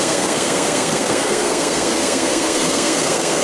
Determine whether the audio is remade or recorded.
remade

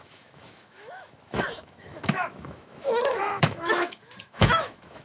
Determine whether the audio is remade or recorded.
remade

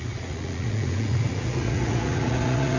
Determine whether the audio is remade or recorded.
remade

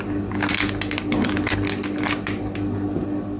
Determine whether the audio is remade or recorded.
recorded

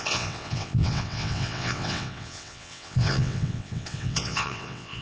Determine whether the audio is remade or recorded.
remade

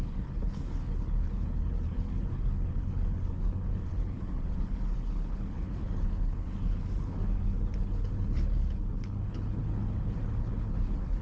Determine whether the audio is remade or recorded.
remade